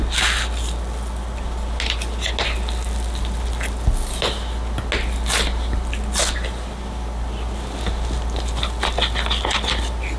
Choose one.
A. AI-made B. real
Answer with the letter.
B